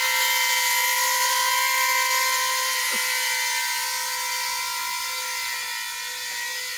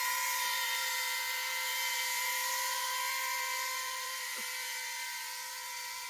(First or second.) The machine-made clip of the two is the second